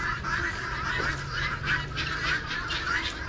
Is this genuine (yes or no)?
yes